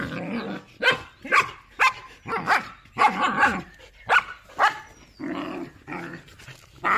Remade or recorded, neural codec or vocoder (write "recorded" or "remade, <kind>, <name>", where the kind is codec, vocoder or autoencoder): recorded